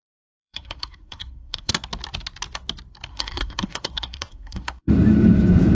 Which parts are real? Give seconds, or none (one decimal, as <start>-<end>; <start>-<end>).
1.7-3.1; 4.9-5.7

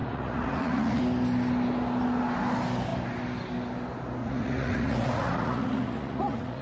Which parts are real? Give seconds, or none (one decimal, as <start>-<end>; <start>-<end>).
1.0-4.2

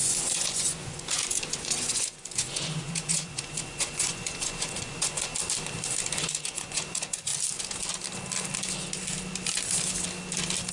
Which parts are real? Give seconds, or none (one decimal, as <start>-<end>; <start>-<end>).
5.3-6.1; 7.3-10.7

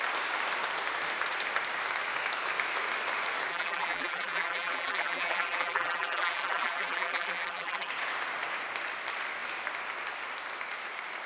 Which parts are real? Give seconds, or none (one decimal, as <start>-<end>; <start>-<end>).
0.0-3.5; 7.9-11.3